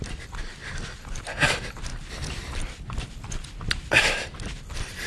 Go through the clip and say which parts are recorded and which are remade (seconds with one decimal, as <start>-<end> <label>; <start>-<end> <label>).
0.0-1.9 recorded; 1.9-5.1 remade